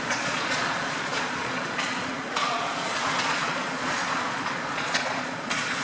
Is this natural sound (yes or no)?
no